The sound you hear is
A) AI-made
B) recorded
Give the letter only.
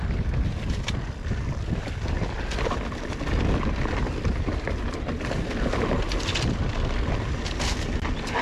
B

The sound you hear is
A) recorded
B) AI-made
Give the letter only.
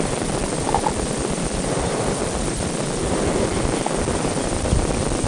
A